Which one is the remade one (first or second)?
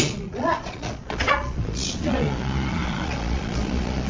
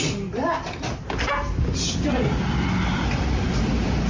first